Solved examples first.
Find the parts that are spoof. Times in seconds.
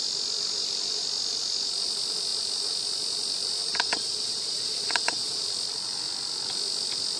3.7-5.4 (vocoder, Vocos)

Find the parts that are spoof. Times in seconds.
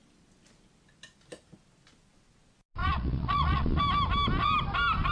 2.8-3.8 (vocoder, Vocos)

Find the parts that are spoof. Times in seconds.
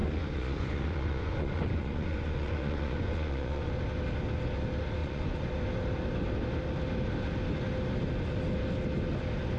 0.0-3.7 (vocoder, Vocos); 5.0-5.5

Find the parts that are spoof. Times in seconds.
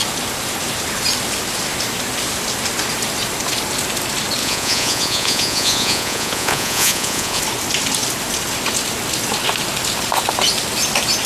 4.4-7.4 (vocoder, Vocos)